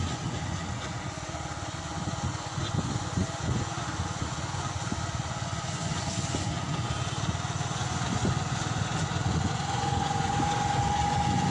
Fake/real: fake